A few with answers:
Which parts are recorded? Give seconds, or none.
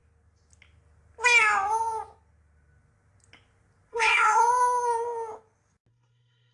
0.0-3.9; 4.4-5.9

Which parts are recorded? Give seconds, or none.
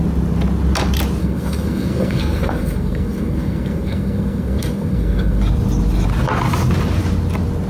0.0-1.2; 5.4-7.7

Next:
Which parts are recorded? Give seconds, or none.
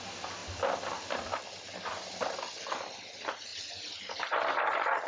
0.0-5.1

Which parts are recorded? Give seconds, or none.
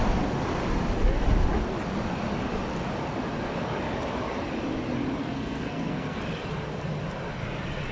0.0-5.2; 6.2-7.9